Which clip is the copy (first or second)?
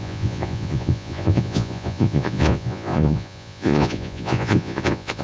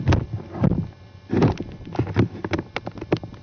first